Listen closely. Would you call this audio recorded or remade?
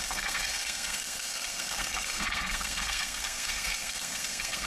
remade